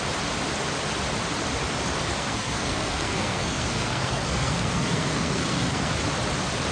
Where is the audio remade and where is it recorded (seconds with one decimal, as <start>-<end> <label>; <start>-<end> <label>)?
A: 0.0-2.1 recorded; 2.1-5.9 remade; 5.9-6.7 recorded